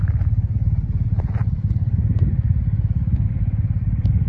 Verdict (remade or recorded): recorded